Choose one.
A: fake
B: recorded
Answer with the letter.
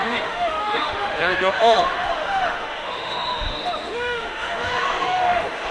A